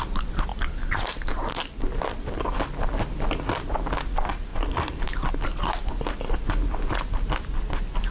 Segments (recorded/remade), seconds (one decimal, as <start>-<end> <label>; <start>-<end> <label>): 0.0-4.5 recorded; 4.5-5.3 remade; 5.3-8.1 recorded

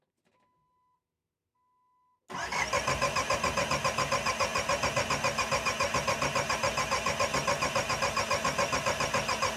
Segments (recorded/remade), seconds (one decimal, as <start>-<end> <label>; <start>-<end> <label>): 0.0-9.6 recorded

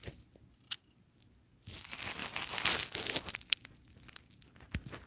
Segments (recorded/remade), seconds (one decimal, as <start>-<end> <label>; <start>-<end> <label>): 0.0-5.1 recorded